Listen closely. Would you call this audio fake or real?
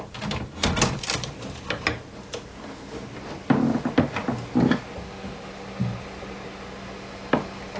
real